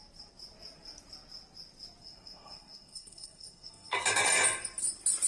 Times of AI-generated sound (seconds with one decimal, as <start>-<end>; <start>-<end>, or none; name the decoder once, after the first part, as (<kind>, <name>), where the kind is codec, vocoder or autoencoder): 2.0-4.0 (codec, SNAC)